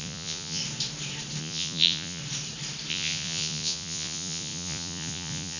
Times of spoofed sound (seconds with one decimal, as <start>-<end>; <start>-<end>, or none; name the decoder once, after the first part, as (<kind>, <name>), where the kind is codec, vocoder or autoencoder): 0.0-0.6 (vocoder, Vocos); 1.4-2.2; 2.9-5.6